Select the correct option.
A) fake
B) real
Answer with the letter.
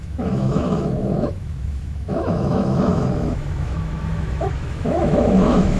A